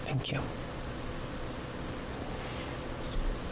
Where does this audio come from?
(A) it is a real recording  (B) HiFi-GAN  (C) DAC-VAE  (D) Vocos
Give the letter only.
A